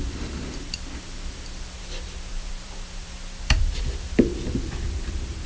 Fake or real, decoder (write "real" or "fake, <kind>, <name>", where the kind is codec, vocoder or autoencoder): fake, vocoder, BigVGAN v2